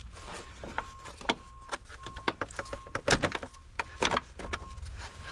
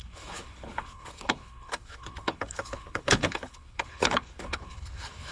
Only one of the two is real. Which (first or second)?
first